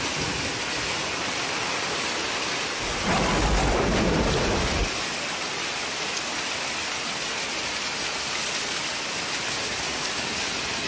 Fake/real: real